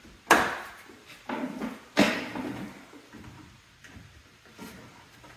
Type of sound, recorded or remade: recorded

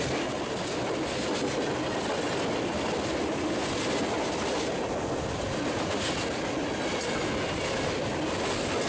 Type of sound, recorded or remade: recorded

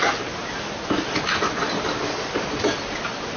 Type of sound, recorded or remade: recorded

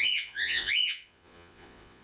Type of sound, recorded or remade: remade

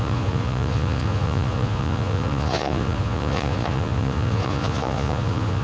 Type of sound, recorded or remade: remade